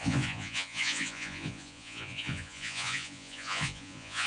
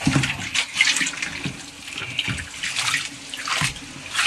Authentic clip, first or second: second